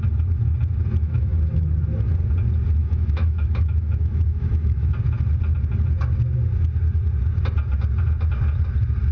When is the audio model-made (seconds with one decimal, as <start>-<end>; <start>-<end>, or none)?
1.0-1.7; 2.8-4.9